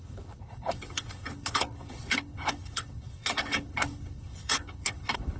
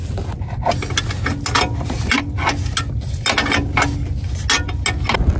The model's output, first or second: first